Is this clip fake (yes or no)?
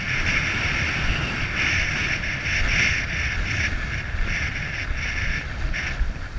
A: no